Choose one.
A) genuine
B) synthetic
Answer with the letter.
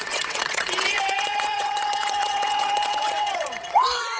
B